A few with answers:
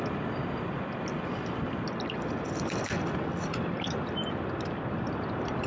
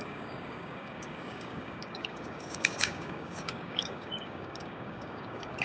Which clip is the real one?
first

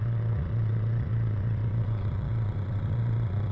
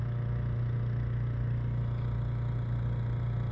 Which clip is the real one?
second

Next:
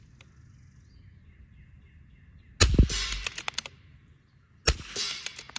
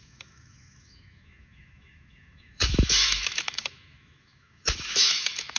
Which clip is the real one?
first